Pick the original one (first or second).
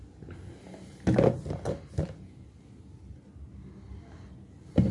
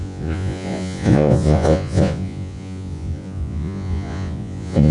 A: first